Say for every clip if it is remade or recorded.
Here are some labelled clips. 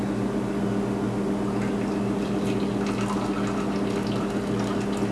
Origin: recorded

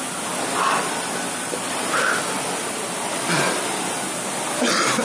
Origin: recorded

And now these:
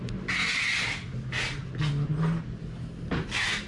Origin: recorded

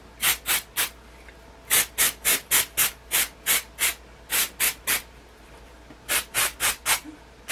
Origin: recorded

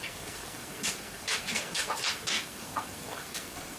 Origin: remade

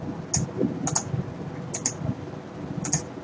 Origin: recorded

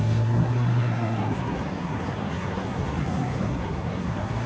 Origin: remade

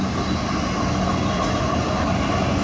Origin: recorded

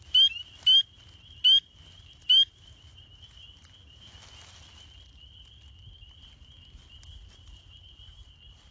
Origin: recorded